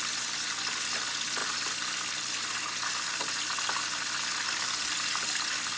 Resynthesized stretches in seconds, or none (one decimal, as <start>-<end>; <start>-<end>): none